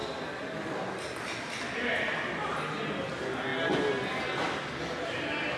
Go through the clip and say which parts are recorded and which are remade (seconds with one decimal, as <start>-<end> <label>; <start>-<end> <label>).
0.0-5.6 recorded